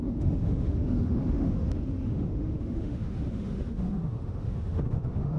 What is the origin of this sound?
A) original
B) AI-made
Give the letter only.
B